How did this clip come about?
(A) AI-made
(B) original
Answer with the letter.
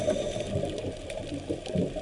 B